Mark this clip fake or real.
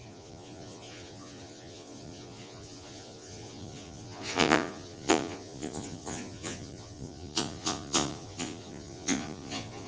fake